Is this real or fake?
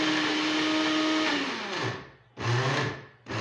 real